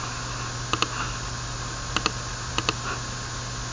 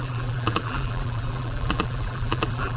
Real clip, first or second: first